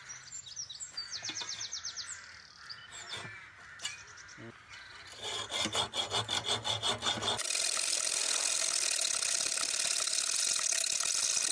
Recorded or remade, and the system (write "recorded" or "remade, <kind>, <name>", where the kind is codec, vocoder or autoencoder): recorded